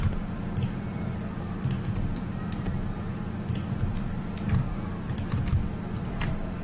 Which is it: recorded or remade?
remade